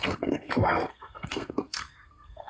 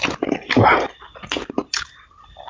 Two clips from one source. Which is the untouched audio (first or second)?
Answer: second